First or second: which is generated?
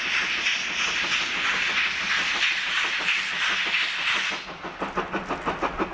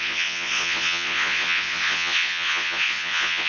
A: second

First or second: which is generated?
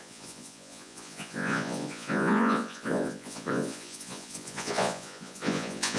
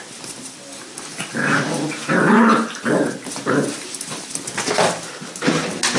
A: first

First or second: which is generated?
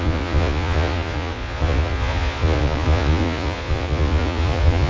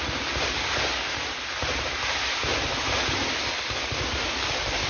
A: first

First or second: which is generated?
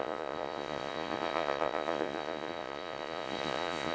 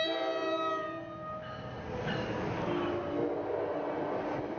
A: first